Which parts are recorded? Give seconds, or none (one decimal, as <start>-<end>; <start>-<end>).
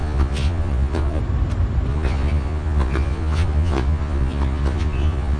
1.2-1.9